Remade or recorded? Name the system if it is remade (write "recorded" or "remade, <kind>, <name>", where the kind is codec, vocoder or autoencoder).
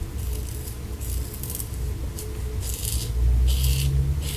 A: recorded